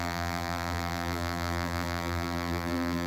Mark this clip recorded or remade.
remade